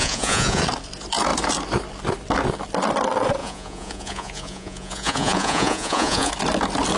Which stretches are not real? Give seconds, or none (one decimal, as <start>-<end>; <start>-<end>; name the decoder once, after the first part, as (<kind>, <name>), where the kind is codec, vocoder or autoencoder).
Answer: 0.0-0.6 (vocoder, Vocos); 3.4-6.3